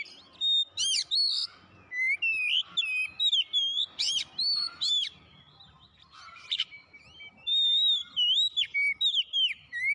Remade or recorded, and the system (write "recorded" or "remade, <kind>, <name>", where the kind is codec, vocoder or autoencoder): recorded